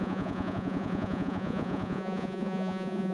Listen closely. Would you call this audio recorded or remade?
remade